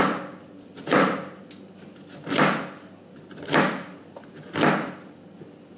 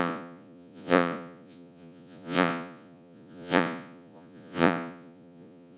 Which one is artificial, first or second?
second